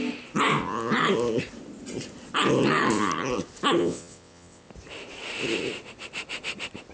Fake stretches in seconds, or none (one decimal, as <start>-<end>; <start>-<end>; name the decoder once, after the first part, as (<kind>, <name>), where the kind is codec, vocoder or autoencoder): 3.8-4.7 (vocoder, WaveNeXt)